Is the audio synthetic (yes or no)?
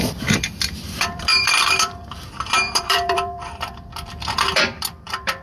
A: yes